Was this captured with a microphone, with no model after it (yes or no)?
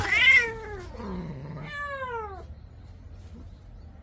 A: yes